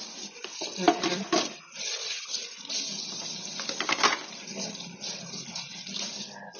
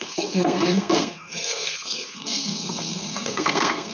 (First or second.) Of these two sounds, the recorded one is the first